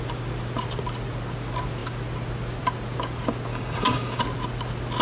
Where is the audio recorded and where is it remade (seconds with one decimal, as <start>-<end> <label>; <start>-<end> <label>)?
0.0-3.5 recorded; 3.5-4.2 remade; 4.2-5.0 recorded